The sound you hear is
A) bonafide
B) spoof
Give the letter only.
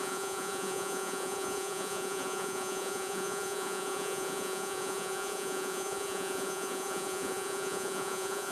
B